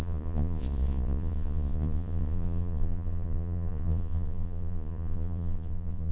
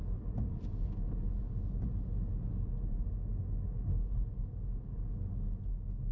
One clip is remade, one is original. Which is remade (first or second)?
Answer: first